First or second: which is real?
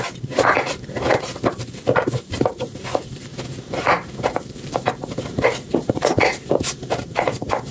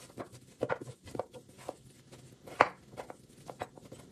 second